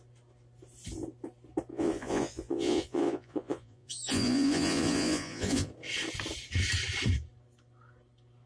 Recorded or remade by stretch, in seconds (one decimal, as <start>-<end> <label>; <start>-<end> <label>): 0.0-1.7 recorded; 1.7-5.7 remade; 5.7-8.5 recorded